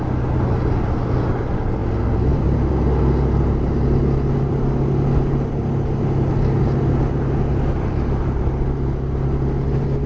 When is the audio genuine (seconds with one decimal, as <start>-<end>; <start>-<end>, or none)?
0.0-10.1

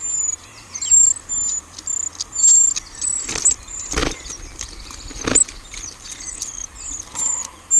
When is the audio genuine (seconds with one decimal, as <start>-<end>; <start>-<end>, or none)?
0.0-7.8

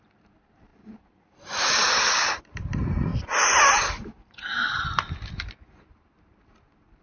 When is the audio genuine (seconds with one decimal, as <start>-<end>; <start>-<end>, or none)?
3.1-3.6; 4.6-5.3

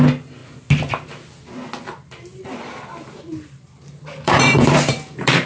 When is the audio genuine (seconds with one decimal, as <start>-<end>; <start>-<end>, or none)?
0.0-2.3